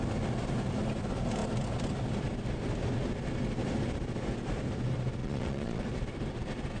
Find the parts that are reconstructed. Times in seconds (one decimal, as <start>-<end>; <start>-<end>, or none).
5.2-5.8